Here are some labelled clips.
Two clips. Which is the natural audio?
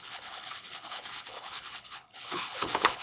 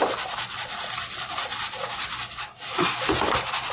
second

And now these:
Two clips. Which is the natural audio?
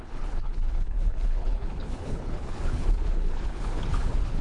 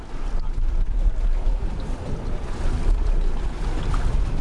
second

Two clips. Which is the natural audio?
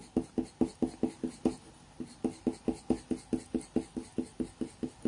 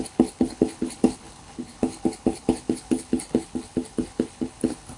first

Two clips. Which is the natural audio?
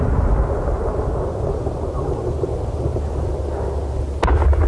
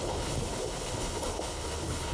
first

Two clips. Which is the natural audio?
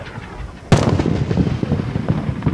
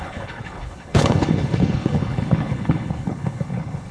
first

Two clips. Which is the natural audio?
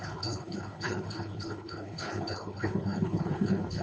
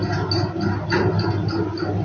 second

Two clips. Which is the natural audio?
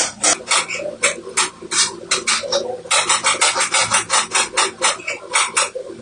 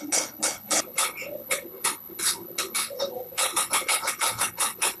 first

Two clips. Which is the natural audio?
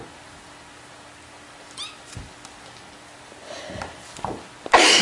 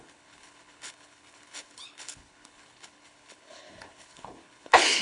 first